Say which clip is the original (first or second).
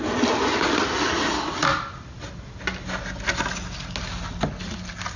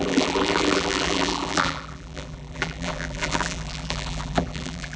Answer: first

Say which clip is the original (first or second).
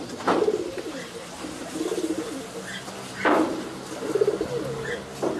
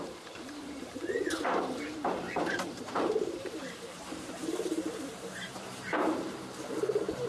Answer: first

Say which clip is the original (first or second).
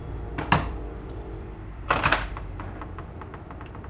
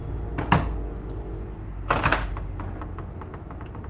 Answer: second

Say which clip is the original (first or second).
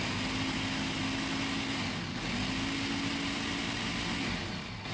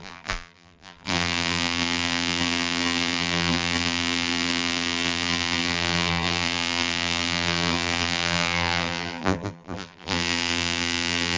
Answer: first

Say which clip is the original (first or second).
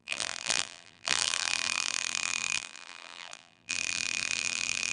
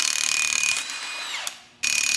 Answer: second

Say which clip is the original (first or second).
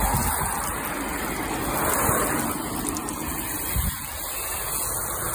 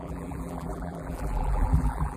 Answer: first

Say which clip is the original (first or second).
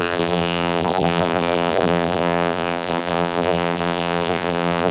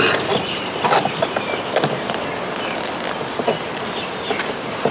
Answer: second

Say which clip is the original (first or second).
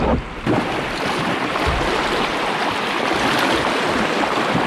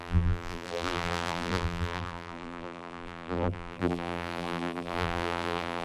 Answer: first